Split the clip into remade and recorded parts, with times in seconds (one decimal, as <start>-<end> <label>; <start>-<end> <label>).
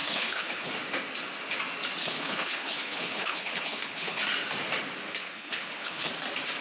0.0-0.7 remade; 0.7-2.0 recorded; 2.0-4.2 remade; 4.2-5.2 recorded; 5.2-6.1 remade; 6.1-6.6 recorded